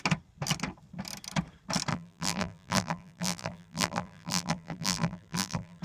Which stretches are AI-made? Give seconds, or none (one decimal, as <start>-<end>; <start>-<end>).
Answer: 1.9-5.8